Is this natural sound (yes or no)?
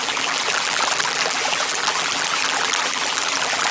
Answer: no